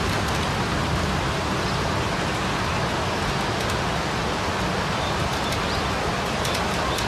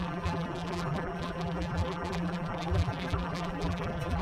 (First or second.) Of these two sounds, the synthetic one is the second